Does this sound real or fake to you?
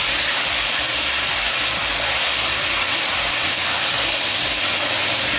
real